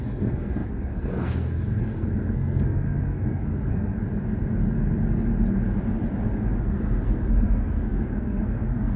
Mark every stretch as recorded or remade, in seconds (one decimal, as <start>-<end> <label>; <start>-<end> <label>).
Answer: 0.0-4.0 remade; 4.0-6.6 recorded; 6.6-9.0 remade